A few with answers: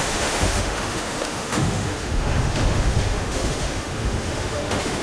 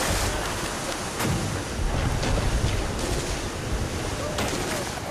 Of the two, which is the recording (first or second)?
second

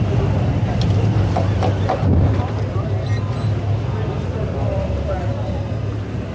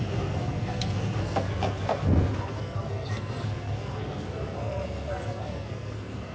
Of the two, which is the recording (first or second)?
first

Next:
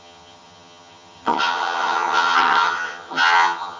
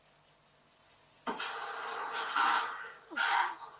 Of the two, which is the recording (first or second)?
second